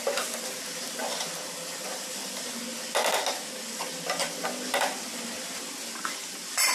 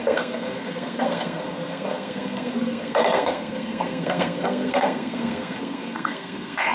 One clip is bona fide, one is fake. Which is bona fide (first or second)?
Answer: first